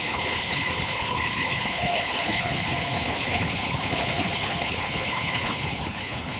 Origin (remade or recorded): remade